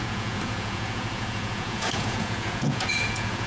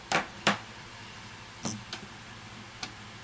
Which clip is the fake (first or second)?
first